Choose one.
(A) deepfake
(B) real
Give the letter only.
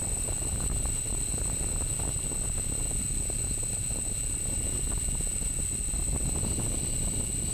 B